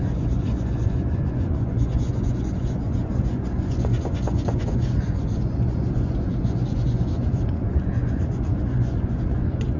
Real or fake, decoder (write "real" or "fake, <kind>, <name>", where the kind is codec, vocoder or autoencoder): fake, vocoder, Vocos